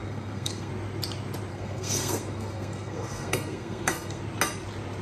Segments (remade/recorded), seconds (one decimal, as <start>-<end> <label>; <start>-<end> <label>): 0.0-0.7 remade; 0.7-1.5 recorded; 1.5-4.2 remade; 4.2-5.0 recorded